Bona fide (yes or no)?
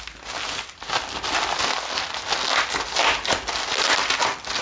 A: yes